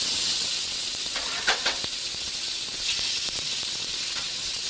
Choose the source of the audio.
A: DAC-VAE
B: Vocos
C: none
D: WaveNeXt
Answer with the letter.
D